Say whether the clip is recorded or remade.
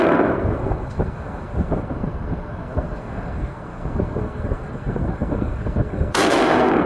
remade